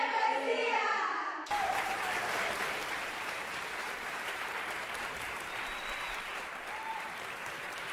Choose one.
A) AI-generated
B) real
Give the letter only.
A